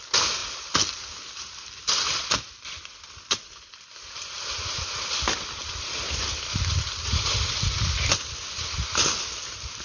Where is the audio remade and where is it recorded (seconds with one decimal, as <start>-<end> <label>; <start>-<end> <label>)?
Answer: 0.0-9.8 recorded